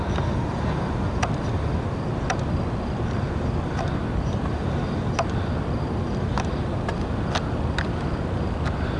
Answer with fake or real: real